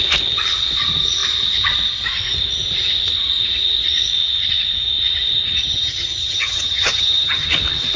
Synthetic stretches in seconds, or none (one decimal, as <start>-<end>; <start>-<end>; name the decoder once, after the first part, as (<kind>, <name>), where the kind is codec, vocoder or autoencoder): 5.6-7.5 (vocoder, HiFi-GAN)